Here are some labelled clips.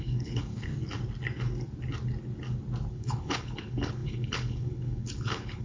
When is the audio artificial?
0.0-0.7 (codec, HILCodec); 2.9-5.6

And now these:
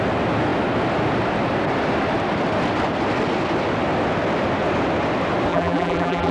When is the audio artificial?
5.5-6.3 (vocoder, BigVGAN v2)

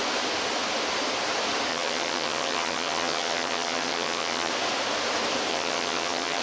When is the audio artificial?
1.7-4.5 (vocoder, HiFi-GAN); 5.5-6.4

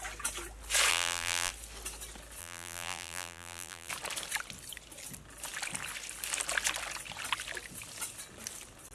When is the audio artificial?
0.9-1.5 (vocoder, BigVGAN v2); 2.4-3.9

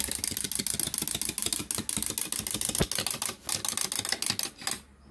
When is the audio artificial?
none

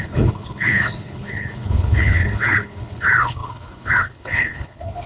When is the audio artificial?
0.0-5.1 (codec, HILCodec)

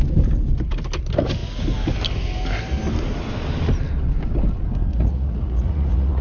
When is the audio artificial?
4.9-6.2 (vocoder, Vocos)